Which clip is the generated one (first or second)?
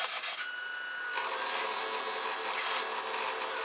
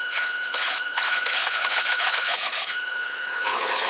second